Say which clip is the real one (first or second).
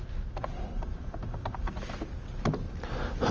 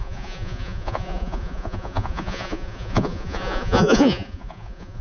first